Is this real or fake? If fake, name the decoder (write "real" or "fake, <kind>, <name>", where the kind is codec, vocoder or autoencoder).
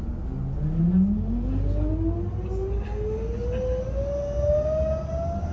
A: real